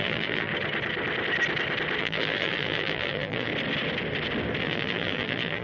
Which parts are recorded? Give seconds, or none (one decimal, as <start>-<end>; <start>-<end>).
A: 0.5-2.0; 3.5-4.6

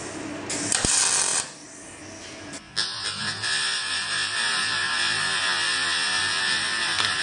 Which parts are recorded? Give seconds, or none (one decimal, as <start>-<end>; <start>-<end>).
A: 0.0-1.3; 2.4-3.2

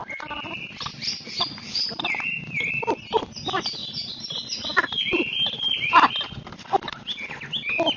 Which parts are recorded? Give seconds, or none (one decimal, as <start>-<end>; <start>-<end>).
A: 3.2-3.8; 4.8-8.0

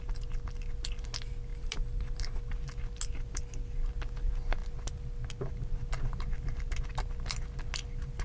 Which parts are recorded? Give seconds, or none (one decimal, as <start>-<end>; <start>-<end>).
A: 0.0-1.5; 2.4-8.2